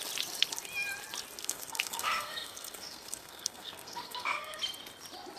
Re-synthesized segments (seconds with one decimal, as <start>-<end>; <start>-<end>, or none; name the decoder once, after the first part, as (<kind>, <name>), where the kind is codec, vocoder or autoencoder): 1.4-4.6 (codec, SNAC)